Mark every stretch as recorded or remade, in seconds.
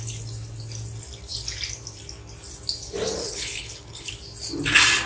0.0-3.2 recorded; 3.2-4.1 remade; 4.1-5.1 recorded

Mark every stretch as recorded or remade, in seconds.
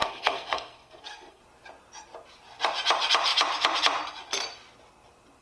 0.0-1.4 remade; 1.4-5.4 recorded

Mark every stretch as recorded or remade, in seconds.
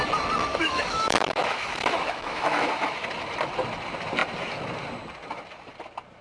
0.0-0.5 recorded; 0.5-2.7 remade; 2.7-6.2 recorded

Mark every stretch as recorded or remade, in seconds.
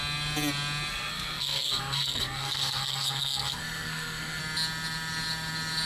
0.0-0.9 recorded; 0.9-4.4 remade; 4.4-5.9 recorded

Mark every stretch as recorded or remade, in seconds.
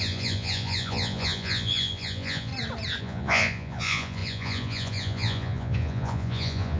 0.0-2.5 remade; 2.5-3.0 recorded; 3.0-6.8 remade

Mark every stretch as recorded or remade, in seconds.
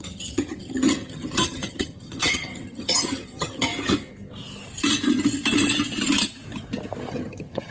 0.0-3.7 remade; 3.7-7.1 recorded; 7.1-7.7 remade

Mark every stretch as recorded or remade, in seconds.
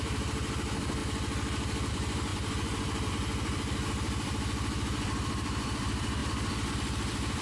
0.0-1.0 remade; 1.0-1.9 recorded; 1.9-7.4 remade